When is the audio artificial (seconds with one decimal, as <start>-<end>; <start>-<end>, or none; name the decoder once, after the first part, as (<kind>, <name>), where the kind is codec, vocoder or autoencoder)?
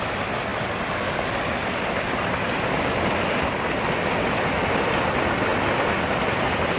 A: none